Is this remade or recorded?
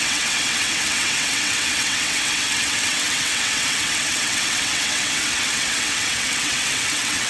remade